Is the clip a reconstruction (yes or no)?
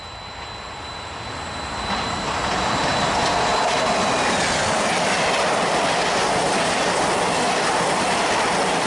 no